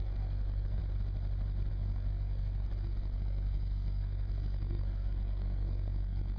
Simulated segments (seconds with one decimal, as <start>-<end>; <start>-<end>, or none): 0.0-0.8; 1.7-6.4